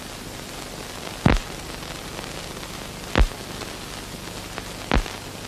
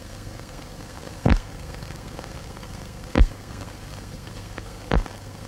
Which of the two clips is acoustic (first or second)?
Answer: first